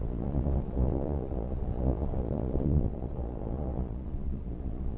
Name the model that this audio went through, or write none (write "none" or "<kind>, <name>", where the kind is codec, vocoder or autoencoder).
vocoder, Vocos